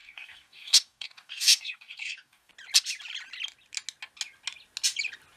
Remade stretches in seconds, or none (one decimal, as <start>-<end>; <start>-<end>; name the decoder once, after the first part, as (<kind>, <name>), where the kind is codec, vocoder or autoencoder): 0.0-2.5 (codec, DAC)